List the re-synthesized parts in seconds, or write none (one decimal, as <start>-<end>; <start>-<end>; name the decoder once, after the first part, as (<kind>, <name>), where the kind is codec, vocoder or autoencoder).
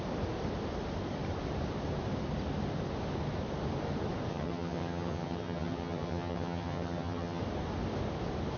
4.3-7.4 (vocoder, HiFi-GAN)